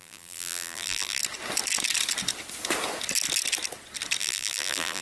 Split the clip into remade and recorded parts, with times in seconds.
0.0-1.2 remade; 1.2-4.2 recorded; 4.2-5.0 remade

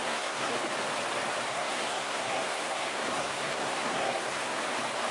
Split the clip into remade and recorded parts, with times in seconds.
0.0-0.5 remade; 0.5-1.5 recorded; 1.5-4.6 remade; 4.6-5.1 recorded

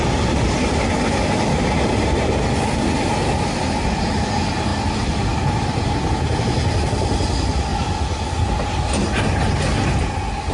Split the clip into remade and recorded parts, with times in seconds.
0.0-10.5 recorded

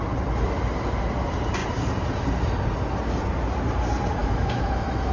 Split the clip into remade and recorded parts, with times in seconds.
0.0-4.2 recorded; 4.2-5.1 remade

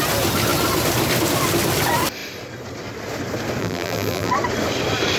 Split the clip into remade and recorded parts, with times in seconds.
0.0-3.6 recorded; 3.6-4.3 remade; 4.3-5.2 recorded

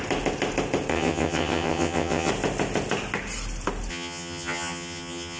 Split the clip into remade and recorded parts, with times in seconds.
0.0-0.9 recorded; 0.9-2.3 remade; 2.3-3.9 recorded; 3.9-5.4 remade

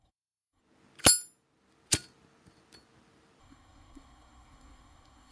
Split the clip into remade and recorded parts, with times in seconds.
0.0-0.6 remade; 0.6-3.4 recorded; 3.4-5.3 remade